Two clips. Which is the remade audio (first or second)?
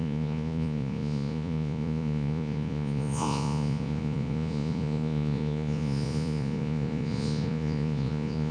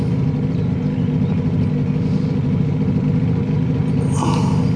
first